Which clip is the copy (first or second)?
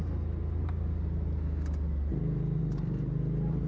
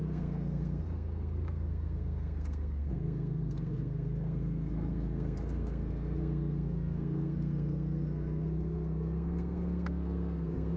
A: second